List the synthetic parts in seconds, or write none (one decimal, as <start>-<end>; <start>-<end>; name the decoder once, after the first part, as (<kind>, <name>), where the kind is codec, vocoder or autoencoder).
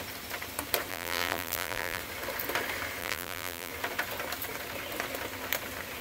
0.9-2.0 (vocoder, BigVGAN v2); 3.0-3.7